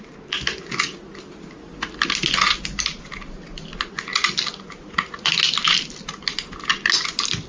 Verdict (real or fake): real